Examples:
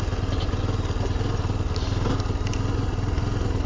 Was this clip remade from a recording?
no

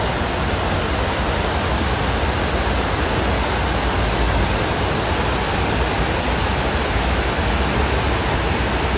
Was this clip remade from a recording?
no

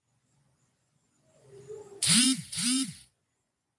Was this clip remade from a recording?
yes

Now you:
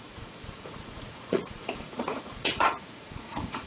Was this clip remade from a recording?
yes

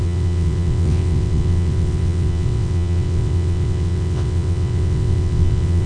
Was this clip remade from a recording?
yes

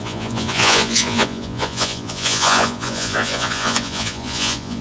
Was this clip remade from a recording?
yes